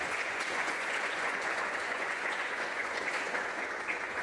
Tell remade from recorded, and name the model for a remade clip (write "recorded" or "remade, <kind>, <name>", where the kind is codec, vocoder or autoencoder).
remade, vocoder, Vocos